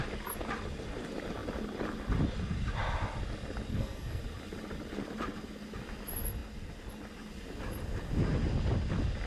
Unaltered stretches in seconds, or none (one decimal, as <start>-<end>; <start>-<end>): 0.0-3.7; 4.2-9.3